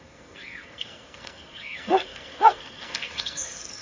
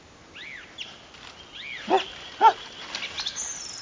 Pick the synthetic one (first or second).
first